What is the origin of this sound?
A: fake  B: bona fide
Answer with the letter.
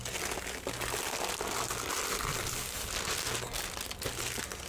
B